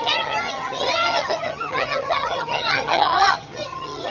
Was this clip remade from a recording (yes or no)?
yes